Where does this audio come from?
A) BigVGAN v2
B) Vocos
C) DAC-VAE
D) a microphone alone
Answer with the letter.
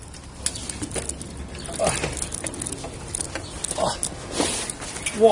D